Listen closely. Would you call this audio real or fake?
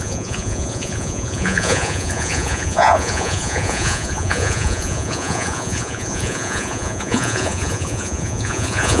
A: fake